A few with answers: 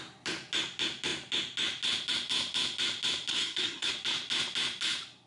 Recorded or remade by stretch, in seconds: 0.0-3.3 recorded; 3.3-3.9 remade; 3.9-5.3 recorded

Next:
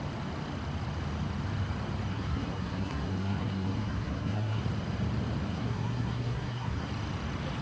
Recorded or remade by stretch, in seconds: 0.0-2.1 recorded; 2.1-4.6 remade; 4.6-5.5 recorded; 5.5-6.9 remade; 6.9-7.6 recorded